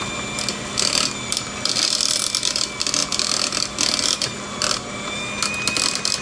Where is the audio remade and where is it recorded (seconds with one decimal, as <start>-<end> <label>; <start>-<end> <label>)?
0.0-6.2 recorded

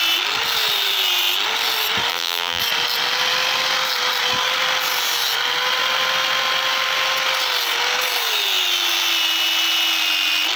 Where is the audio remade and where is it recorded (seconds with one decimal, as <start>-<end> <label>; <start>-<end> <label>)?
0.0-2.1 recorded; 2.1-2.6 remade; 2.6-10.6 recorded

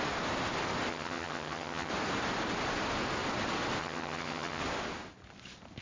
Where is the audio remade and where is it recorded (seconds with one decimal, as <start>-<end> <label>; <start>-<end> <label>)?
0.0-0.9 recorded; 0.9-1.9 remade; 1.9-3.8 recorded; 3.8-4.6 remade; 4.6-5.8 recorded

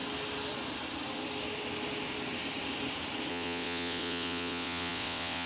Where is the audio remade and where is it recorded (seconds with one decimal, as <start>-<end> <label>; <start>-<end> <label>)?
0.0-3.3 recorded; 3.3-5.5 remade

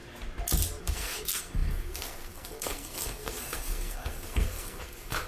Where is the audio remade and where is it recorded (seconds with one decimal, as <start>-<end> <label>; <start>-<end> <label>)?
0.0-0.8 recorded; 0.8-5.3 remade